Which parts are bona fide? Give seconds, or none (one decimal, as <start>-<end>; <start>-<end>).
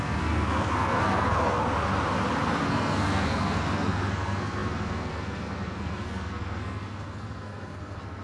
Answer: 1.6-2.7